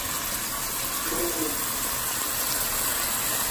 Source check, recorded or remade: recorded